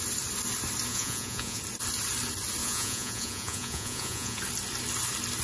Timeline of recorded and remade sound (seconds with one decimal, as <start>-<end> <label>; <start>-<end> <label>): 0.0-0.9 recorded; 0.9-1.6 remade; 1.6-2.6 recorded; 2.6-4.4 remade; 4.4-5.4 recorded